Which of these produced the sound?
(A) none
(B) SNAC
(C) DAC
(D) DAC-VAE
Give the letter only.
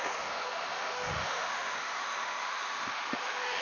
D